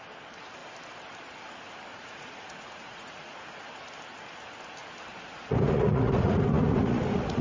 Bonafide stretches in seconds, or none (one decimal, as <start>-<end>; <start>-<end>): 0.0-1.9; 3.4-5.1